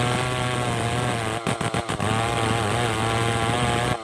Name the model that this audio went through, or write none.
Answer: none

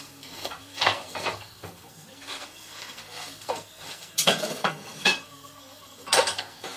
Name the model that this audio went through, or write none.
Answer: codec, SNAC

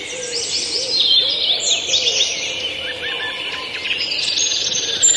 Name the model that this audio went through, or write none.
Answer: none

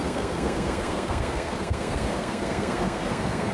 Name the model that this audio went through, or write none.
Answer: codec, SNAC